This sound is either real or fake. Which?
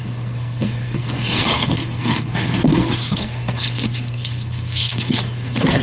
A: fake